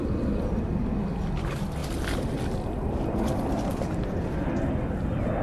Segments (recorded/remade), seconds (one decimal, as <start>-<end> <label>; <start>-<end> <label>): 0.0-5.4 recorded